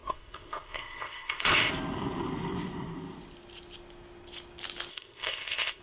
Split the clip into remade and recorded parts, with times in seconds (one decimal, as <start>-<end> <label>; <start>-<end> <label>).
0.0-1.7 remade; 1.7-4.9 recorded; 4.9-5.8 remade